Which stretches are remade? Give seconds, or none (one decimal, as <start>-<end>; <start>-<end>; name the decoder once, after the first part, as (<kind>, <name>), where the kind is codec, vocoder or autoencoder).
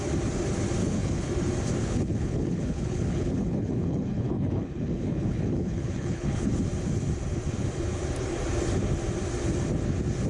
0.8-1.3 (codec, HILCodec); 1.8-6.5